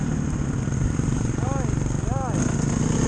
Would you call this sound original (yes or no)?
yes